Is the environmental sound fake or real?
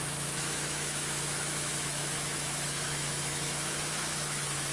fake